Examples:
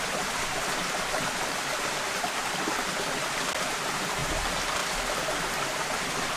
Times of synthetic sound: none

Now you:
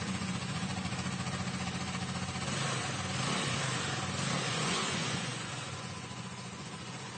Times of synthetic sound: 0.0-0.7; 4.4-7.2

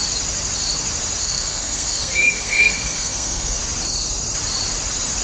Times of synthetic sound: 1.2-3.6

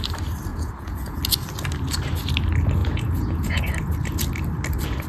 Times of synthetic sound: 0.5-1.2; 2.8-3.6